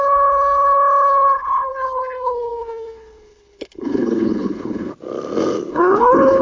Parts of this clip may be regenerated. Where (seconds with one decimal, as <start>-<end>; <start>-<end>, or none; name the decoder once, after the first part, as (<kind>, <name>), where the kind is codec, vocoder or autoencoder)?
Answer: 0.0-4.9 (codec, HILCodec); 5.7-6.4